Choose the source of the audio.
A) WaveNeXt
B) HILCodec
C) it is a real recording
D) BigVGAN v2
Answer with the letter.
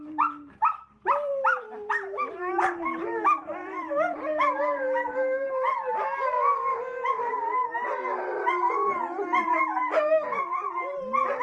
D